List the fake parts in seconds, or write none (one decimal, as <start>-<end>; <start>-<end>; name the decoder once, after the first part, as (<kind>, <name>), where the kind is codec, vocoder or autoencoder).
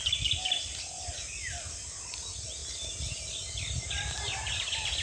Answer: none